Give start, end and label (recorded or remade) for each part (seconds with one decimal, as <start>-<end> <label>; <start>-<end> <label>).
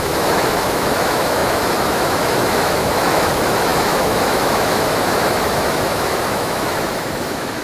0.0-7.6 remade